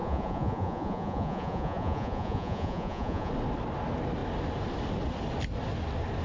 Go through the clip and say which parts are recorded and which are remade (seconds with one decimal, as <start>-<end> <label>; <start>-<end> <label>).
0.0-3.3 remade; 3.3-6.2 recorded

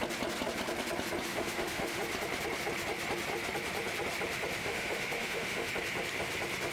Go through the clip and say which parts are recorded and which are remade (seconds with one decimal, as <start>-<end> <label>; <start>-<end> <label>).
0.0-1.3 recorded; 1.3-2.0 remade; 2.0-4.6 recorded; 4.6-5.7 remade; 5.7-6.7 recorded

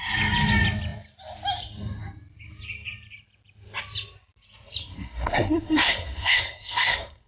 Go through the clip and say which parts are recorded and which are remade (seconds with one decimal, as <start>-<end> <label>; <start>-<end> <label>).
0.0-4.8 recorded; 4.8-7.3 remade

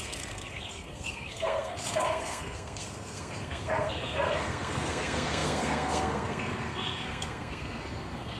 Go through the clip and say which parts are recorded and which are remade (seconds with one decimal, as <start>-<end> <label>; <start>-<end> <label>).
0.0-8.4 remade

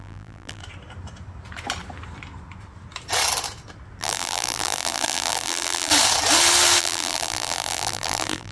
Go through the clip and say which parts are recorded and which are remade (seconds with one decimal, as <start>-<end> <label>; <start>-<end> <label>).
0.0-0.6 remade; 0.6-4.0 recorded; 4.0-5.9 remade; 5.9-6.8 recorded; 6.8-8.5 remade

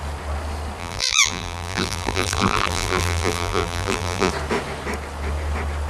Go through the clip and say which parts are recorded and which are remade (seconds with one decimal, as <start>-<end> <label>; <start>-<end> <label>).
0.0-0.8 recorded; 0.8-4.3 remade; 4.3-5.9 recorded

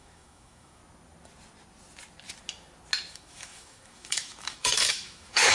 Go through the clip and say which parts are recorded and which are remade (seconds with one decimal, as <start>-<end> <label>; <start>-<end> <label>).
0.0-0.8 remade; 0.8-3.1 recorded; 3.1-5.5 remade